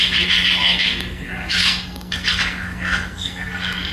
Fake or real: fake